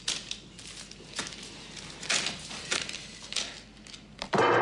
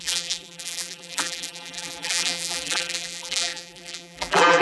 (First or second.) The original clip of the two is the first